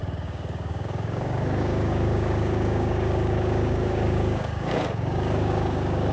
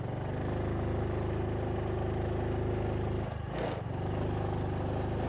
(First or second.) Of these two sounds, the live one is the second